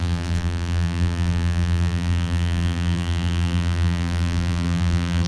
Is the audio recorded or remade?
remade